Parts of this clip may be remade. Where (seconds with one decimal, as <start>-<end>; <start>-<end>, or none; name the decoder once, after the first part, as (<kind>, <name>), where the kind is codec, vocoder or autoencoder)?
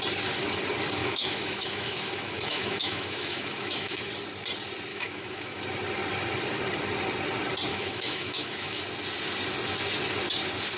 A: 1.0-4.1 (autoencoder, DAC-VAE); 4.9-5.6; 7.7-8.8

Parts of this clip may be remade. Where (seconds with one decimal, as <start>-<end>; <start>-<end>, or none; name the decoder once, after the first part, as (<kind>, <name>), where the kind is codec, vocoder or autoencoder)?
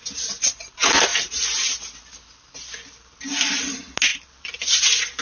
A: none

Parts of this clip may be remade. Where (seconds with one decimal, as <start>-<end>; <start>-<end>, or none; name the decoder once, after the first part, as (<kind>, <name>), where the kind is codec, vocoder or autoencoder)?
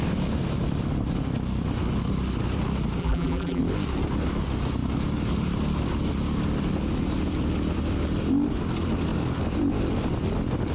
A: 3.0-3.6 (vocoder, BigVGAN v2)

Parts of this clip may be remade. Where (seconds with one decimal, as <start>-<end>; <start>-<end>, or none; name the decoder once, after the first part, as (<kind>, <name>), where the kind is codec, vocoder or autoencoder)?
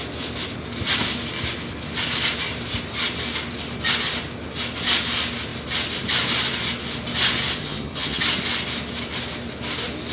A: 7.6-8.2 (vocoder, HiFi-GAN)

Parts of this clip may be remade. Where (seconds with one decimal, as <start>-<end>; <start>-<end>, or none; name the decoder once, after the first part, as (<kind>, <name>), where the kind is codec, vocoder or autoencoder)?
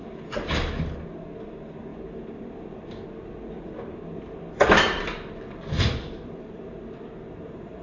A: 1.9-6.6 (vocoder, BigVGAN v2)